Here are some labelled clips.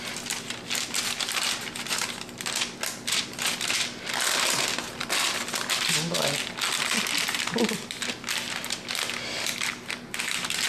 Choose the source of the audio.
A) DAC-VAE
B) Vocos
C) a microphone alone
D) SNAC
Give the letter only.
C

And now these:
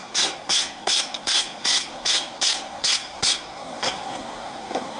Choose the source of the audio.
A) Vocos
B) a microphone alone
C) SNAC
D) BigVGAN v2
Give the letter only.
C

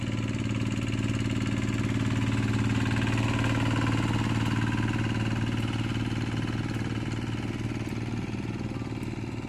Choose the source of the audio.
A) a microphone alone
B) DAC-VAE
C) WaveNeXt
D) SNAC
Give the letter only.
A